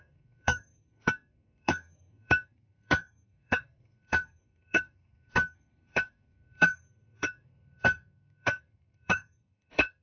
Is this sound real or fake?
fake